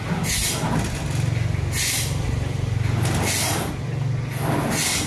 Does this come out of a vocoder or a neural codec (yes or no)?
no